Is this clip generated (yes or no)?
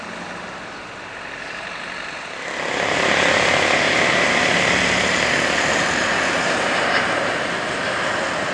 no